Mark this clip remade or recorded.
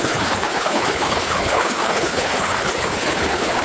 remade